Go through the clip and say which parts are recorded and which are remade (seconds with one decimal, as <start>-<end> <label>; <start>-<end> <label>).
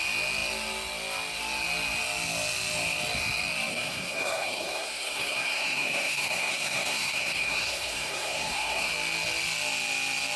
0.0-3.7 recorded; 3.7-8.9 remade; 8.9-10.4 recorded